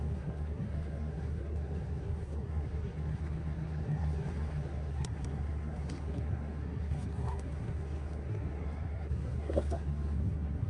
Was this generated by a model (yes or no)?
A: yes